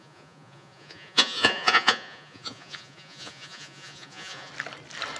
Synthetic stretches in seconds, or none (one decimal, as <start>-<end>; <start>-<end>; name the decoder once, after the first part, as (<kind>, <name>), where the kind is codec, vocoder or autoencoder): 0.0-4.5 (vocoder, Vocos)

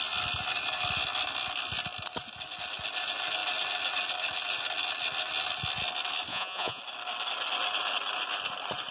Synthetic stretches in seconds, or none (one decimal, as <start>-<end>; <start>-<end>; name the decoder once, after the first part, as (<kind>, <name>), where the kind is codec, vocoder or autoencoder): 6.3-6.8 (vocoder, Vocos)

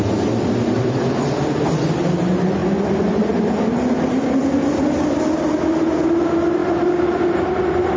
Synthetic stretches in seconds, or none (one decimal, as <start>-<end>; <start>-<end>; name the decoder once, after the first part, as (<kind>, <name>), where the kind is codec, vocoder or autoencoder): none

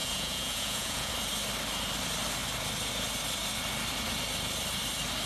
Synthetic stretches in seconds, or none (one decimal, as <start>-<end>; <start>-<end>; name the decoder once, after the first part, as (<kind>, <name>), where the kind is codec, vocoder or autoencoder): 0.0-1.1 (vocoder, Vocos)

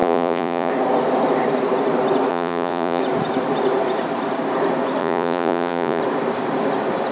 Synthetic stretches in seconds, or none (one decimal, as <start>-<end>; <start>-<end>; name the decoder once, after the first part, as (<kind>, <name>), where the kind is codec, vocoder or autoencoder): 0.0-0.7 (vocoder, Vocos); 2.3-3.0; 5.0-6.0

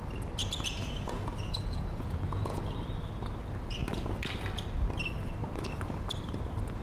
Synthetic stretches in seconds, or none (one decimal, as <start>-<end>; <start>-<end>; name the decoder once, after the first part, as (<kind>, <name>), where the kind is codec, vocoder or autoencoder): 0.4-2.6 (vocoder, Vocos)

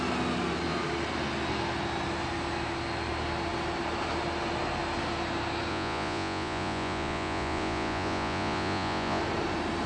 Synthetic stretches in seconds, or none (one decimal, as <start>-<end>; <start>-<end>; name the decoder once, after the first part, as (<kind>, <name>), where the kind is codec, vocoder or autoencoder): 5.7-9.2 (vocoder, Vocos)

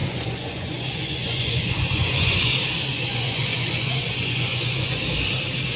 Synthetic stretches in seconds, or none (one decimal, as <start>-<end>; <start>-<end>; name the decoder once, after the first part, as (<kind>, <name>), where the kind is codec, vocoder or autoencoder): 0.0-2.5 (vocoder, Vocos); 2.9-5.0